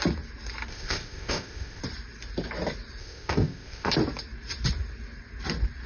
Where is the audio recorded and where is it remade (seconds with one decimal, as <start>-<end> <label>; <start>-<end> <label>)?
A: 0.0-0.7 recorded; 0.7-1.8 remade; 1.8-3.0 recorded; 3.0-3.9 remade; 3.9-5.9 recorded